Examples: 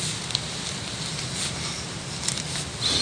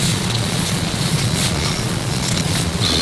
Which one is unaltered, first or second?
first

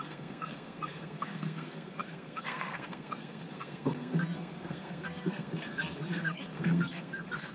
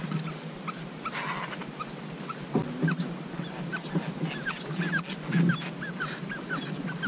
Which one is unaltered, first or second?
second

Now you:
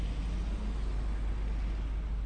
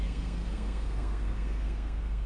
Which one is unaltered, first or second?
first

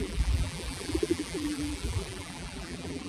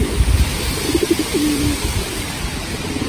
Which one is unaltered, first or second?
second